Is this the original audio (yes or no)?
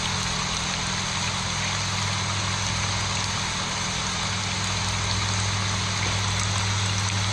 yes